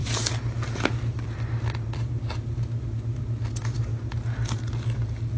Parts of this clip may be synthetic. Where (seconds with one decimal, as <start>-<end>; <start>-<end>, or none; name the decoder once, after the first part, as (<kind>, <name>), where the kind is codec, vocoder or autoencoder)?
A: none